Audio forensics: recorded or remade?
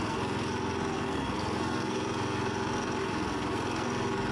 remade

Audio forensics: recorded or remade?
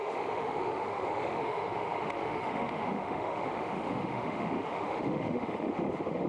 remade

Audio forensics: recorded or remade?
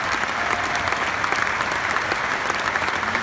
recorded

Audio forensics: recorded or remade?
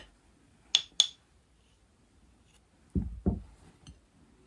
recorded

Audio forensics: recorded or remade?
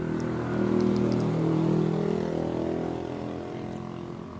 recorded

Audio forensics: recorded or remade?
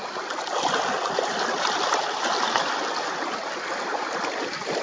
recorded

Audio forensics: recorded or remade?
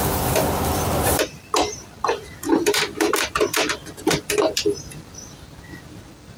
remade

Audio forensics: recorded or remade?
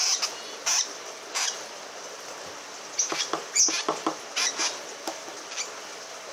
recorded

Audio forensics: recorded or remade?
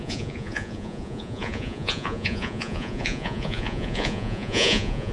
remade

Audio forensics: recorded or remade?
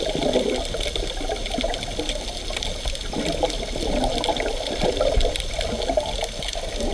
recorded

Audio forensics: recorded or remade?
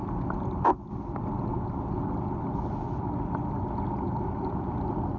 recorded